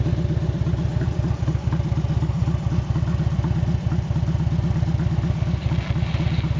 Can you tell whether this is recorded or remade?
recorded